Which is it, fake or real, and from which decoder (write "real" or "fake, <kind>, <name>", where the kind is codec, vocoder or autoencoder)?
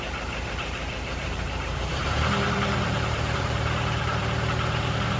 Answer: fake, vocoder, BigVGAN v2